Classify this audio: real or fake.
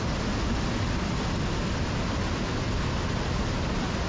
real